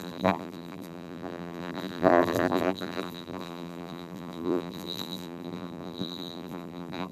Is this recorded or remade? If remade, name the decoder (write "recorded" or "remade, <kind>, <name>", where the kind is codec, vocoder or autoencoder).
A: remade, vocoder, BigVGAN v2